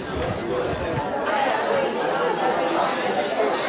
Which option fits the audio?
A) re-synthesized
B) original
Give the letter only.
B